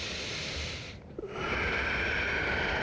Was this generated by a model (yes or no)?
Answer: yes